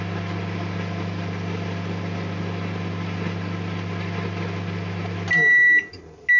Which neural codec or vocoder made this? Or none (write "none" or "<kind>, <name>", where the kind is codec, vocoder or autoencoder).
none